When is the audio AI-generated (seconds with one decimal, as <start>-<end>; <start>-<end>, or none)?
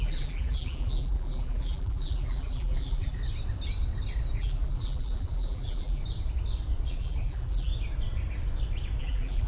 0.0-3.2; 4.4-6.0; 6.9-7.7; 9.0-9.5